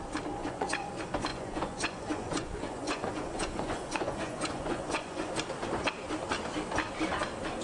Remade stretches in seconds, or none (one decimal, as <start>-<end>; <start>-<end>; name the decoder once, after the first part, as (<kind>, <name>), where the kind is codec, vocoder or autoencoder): 0.4-0.9 (vocoder, Vocos); 1.3-5.3